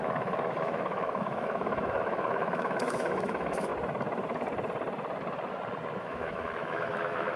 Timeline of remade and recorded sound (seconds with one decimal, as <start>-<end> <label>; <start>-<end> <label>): 0.0-3.7 remade; 3.7-6.0 recorded; 6.0-7.4 remade